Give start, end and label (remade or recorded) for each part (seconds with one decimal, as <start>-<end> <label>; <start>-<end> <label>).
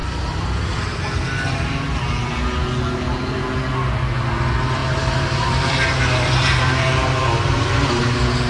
0.0-1.6 remade; 1.6-4.8 recorded; 4.8-8.0 remade; 8.0-8.5 recorded